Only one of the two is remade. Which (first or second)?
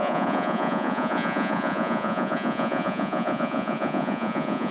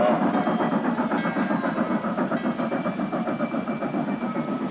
first